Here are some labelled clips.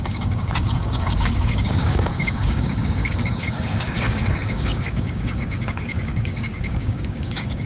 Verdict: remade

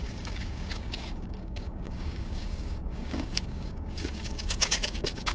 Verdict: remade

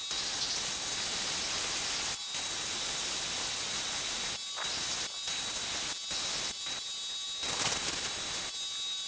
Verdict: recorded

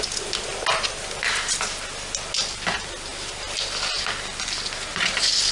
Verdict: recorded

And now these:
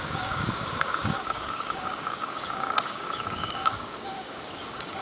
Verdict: remade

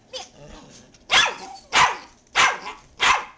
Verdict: recorded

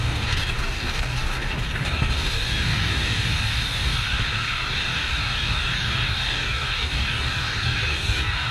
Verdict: remade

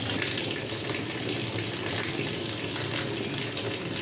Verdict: recorded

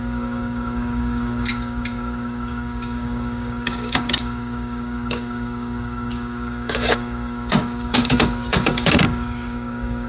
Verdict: remade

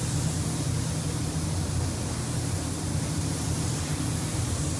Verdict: recorded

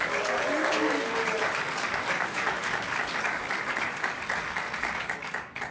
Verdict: remade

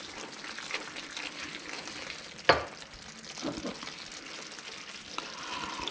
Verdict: recorded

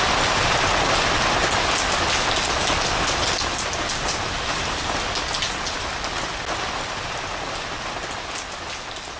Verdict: recorded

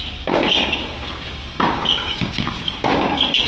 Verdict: remade